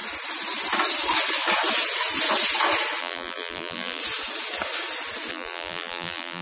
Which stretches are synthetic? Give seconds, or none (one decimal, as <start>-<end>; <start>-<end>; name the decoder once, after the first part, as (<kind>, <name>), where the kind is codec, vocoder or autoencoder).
3.0-4.0 (vocoder, BigVGAN v2); 5.3-6.4